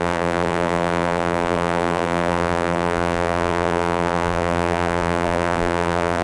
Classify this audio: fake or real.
fake